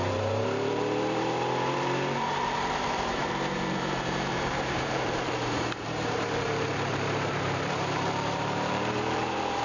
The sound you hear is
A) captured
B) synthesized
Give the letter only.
B